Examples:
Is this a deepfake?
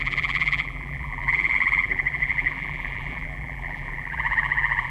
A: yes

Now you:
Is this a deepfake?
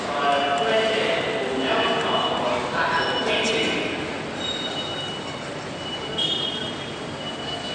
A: no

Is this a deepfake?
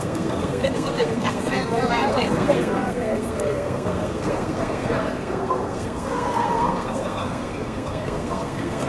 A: yes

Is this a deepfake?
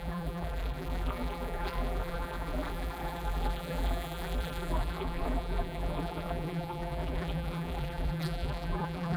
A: yes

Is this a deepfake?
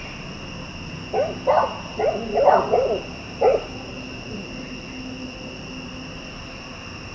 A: no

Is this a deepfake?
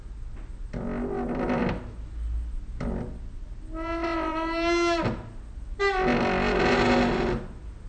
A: no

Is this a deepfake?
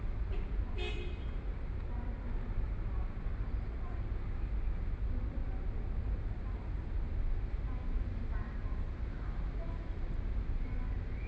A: no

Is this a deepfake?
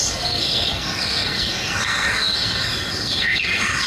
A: yes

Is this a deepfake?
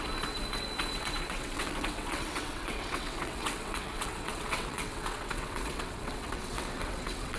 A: yes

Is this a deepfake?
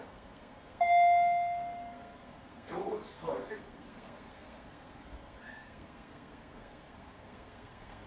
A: yes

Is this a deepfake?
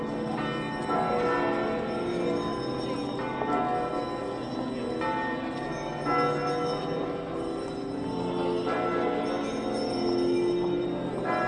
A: no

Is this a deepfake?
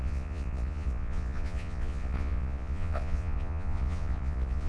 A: yes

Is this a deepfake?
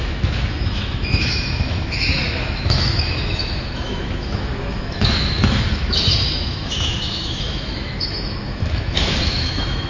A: yes